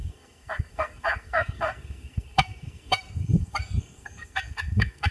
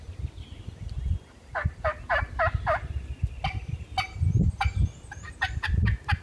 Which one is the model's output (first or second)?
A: first